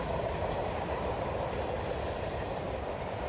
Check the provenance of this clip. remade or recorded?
recorded